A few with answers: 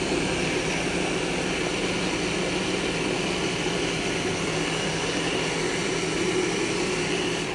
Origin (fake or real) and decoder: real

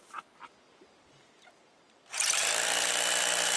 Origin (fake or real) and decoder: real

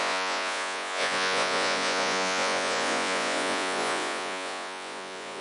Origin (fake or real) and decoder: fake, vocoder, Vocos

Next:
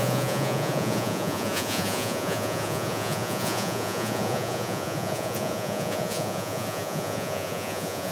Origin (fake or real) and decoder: fake, vocoder, Vocos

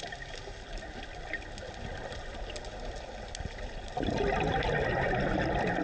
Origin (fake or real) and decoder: real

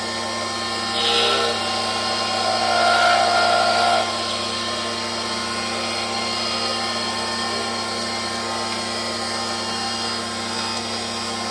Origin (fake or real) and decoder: real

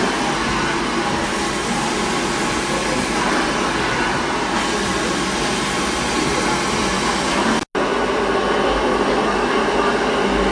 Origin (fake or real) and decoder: real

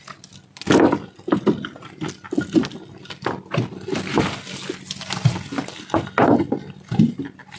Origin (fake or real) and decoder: real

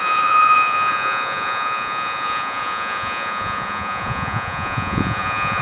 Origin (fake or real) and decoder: fake, vocoder, Vocos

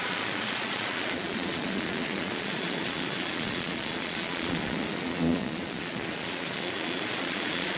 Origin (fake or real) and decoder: fake, vocoder, Vocos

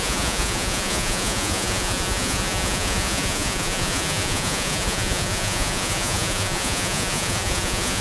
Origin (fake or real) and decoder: fake, vocoder, Vocos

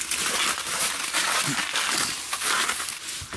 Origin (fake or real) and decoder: real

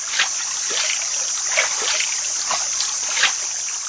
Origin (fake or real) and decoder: real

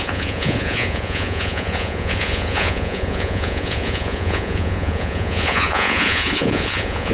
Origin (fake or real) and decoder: fake, vocoder, Vocos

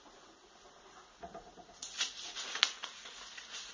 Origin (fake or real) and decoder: fake, vocoder, Vocos